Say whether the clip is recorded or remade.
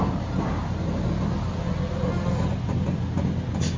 recorded